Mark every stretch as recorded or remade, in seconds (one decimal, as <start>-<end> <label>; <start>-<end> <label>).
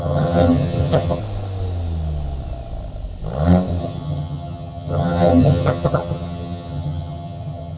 0.0-1.2 remade; 1.2-3.8 recorded; 3.8-7.8 remade